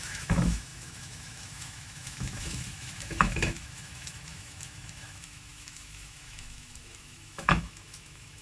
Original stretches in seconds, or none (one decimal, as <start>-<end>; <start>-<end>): none